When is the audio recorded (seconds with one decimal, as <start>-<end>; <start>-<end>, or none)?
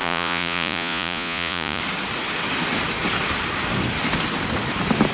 1.8-5.1